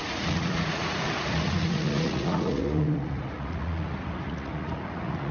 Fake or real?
fake